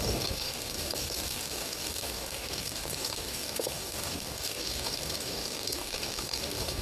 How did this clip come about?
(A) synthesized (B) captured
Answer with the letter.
A